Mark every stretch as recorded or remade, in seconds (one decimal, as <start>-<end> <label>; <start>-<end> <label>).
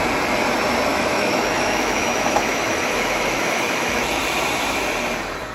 0.0-0.9 recorded; 0.9-4.2 remade; 4.2-5.5 recorded